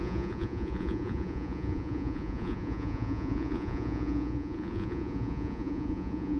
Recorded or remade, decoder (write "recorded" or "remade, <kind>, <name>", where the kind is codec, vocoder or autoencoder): remade, vocoder, Vocos